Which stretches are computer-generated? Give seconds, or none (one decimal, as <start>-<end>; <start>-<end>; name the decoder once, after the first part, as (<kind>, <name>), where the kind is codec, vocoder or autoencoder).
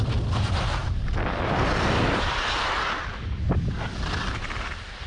none